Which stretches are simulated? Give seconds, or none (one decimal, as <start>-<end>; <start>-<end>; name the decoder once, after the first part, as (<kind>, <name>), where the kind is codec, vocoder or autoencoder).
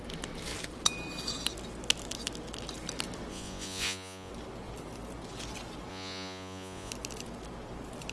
3.3-4.3 (vocoder, Vocos); 5.9-6.9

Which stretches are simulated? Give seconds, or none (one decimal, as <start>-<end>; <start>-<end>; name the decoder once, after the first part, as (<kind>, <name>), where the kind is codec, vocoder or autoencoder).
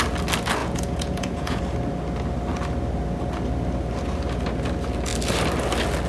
0.6-1.6 (vocoder, Vocos)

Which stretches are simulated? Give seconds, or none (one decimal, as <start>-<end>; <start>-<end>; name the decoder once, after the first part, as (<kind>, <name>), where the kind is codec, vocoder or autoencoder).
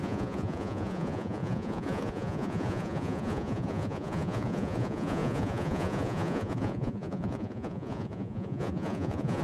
0.0-9.4 (vocoder, Vocos)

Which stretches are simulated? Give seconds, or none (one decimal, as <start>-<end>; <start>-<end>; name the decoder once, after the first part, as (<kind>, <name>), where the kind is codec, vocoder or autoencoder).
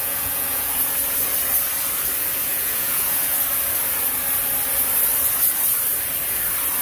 0.0-0.7 (vocoder, Vocos); 2.4-3.4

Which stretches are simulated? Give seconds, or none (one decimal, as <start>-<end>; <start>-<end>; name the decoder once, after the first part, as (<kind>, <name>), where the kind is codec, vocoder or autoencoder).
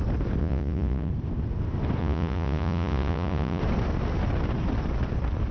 0.4-1.1 (vocoder, Vocos); 2.0-3.6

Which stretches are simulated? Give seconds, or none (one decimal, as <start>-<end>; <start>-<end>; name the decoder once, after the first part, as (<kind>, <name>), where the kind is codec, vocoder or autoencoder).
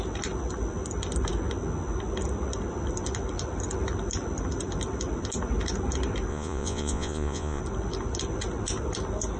6.3-7.6 (vocoder, Vocos)